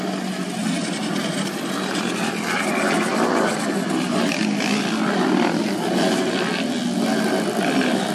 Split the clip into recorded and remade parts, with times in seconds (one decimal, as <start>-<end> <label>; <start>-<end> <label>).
0.0-8.1 recorded